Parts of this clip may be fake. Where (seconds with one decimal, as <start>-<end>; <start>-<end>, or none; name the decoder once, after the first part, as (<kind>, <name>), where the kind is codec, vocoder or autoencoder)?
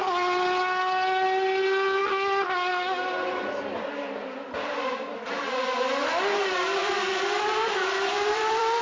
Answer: 6.8-8.8 (vocoder, BigVGAN v2)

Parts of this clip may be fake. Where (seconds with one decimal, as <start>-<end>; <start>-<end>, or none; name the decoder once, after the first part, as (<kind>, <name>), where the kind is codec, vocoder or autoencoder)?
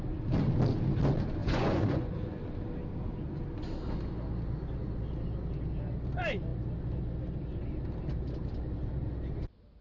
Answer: 1.4-2.4 (vocoder, Vocos)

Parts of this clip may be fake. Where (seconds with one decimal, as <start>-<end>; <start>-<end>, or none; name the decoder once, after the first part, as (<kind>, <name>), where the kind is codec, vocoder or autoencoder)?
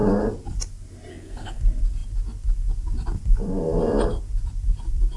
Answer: 1.1-1.6 (codec, SNAC)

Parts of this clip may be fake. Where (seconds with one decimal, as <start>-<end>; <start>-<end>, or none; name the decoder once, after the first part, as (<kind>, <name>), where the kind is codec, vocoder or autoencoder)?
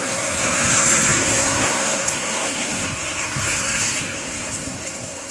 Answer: 0.0-5.3 (codec, SNAC)